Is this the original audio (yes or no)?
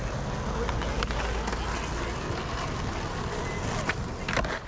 yes